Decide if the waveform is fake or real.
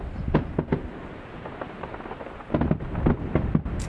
real